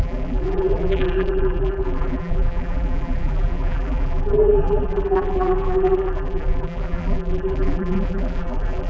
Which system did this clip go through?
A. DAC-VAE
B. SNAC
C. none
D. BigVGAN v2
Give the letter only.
D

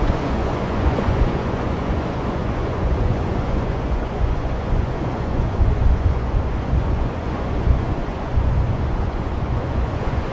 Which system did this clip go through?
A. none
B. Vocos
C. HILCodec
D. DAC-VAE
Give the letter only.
B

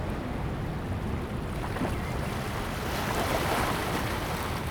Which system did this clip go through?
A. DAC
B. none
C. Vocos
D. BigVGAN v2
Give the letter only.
B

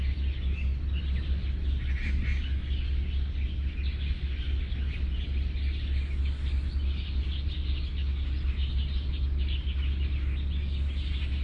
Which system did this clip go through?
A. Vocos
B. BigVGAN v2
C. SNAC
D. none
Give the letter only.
D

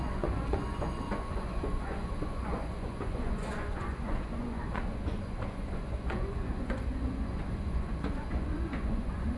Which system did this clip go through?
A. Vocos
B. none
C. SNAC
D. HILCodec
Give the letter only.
A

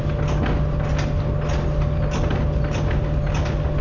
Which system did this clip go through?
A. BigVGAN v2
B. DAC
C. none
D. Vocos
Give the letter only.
C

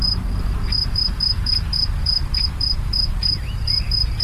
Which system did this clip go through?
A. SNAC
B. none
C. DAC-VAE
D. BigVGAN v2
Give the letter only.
D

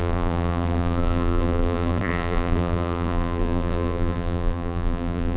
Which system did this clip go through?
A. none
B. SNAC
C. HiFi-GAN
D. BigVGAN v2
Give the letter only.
D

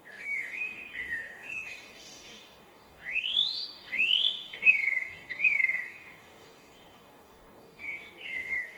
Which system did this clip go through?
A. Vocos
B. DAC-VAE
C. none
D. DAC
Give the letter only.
D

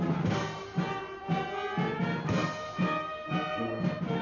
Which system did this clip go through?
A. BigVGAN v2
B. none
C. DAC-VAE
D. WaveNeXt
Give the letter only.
B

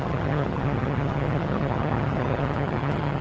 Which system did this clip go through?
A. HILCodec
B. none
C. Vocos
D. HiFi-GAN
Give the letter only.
D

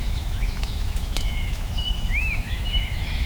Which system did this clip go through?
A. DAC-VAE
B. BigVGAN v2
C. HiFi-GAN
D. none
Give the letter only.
A